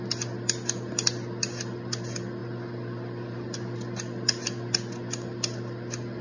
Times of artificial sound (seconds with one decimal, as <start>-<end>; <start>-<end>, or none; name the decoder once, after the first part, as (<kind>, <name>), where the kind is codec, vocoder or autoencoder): none